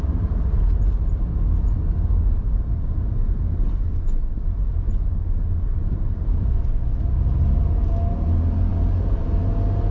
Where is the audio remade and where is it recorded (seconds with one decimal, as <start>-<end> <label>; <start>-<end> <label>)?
0.0-9.9 recorded